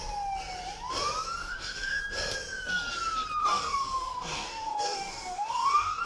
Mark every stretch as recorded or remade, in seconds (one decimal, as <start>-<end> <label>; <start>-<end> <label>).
0.0-1.4 recorded; 1.4-2.0 remade; 2.0-3.4 recorded; 3.4-6.0 remade

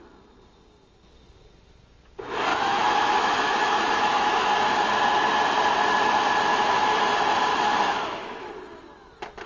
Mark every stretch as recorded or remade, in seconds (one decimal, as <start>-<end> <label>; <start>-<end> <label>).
0.0-2.5 recorded; 2.5-4.5 remade; 4.5-6.5 recorded; 6.5-7.1 remade; 7.1-7.5 recorded; 7.5-8.5 remade; 8.5-9.5 recorded

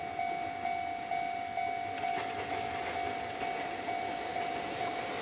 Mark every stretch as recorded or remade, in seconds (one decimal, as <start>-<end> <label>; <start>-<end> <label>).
0.0-2.1 recorded; 2.1-2.8 remade; 2.8-5.2 recorded

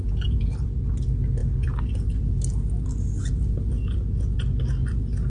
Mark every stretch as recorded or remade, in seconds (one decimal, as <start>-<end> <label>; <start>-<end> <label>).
0.0-5.3 recorded